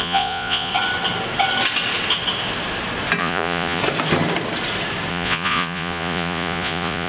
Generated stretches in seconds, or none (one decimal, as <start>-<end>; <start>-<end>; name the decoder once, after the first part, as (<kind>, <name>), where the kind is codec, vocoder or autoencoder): 0.0-0.7 (vocoder, Vocos); 3.2-3.8; 5.1-7.1